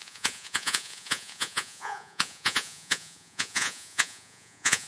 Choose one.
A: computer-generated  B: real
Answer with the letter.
A